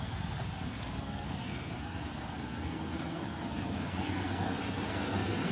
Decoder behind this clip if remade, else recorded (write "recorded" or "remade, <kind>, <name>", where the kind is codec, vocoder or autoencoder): remade, codec, SNAC